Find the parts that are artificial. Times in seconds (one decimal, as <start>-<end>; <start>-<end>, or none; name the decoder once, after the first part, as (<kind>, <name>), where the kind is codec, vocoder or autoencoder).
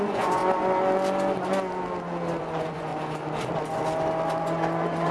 0.0-0.4 (vocoder, Vocos); 2.4-2.9; 4.4-5.1